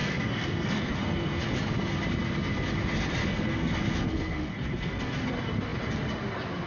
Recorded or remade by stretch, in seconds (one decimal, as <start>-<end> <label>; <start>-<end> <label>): 0.0-1.4 remade; 1.4-3.2 recorded; 3.2-5.3 remade; 5.3-6.7 recorded